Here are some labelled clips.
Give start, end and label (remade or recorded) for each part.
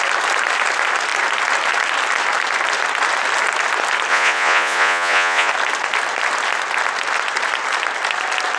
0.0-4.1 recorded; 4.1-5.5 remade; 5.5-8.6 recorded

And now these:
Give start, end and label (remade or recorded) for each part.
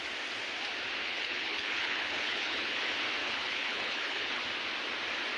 0.0-1.0 recorded; 1.0-2.8 remade; 2.8-3.2 recorded; 3.2-4.4 remade; 4.4-5.4 recorded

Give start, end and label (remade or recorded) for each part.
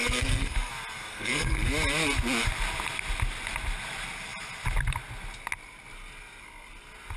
0.0-0.7 remade; 0.7-1.1 recorded; 1.1-1.7 remade; 1.7-7.2 recorded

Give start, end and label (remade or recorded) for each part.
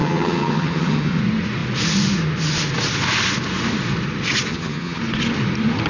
0.0-1.2 remade; 1.2-4.5 recorded; 4.5-5.0 remade; 5.0-5.9 recorded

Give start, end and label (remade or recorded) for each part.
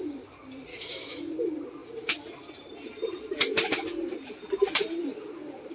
0.0-0.7 recorded; 0.7-1.2 remade; 1.2-5.7 recorded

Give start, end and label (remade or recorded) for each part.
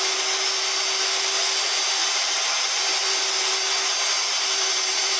0.0-4.3 recorded; 4.3-5.2 remade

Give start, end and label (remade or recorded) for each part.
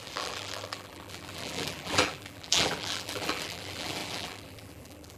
0.0-5.2 remade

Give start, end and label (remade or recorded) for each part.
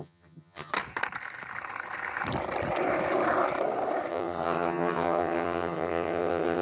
0.0-0.7 remade; 0.7-4.1 recorded; 4.1-6.6 remade